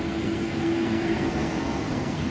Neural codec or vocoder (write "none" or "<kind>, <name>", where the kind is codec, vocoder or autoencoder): codec, SNAC